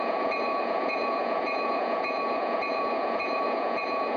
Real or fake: fake